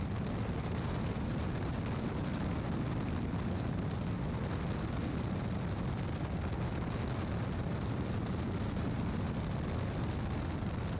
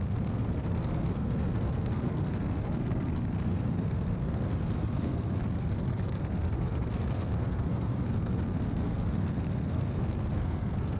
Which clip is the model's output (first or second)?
second